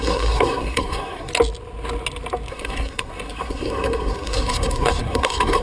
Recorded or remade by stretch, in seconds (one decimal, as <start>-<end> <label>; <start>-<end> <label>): 0.0-1.3 remade; 1.3-2.5 recorded; 2.5-5.6 remade